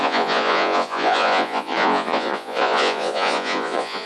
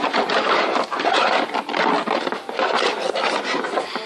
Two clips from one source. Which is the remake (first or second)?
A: first